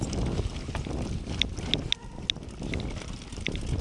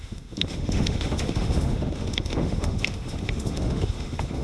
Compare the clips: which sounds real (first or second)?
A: first